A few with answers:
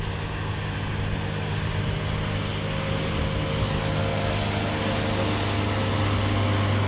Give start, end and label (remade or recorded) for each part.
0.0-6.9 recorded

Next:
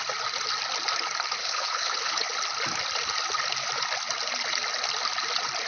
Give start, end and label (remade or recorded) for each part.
0.0-1.4 recorded; 1.4-2.3 remade; 2.3-5.7 recorded

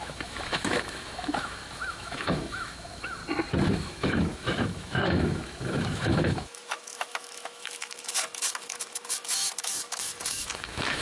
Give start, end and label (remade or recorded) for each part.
0.0-3.2 remade; 3.2-3.7 recorded; 3.7-11.0 remade

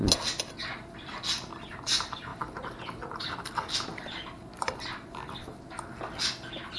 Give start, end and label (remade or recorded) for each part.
0.0-6.8 recorded

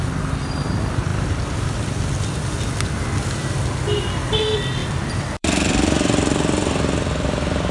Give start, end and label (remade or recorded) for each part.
0.0-1.1 recorded; 1.1-1.9 remade; 1.9-4.8 recorded; 4.8-7.7 remade

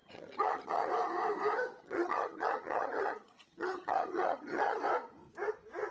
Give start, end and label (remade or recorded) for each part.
0.0-0.9 remade; 0.9-1.8 recorded; 1.8-4.8 remade; 4.8-5.9 recorded

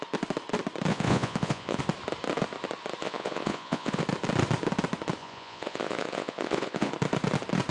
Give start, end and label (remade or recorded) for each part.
0.0-0.9 recorded; 0.9-1.8 remade; 1.8-3.0 recorded; 3.0-4.0 remade; 4.0-5.2 recorded; 5.2-6.9 remade; 6.9-7.7 recorded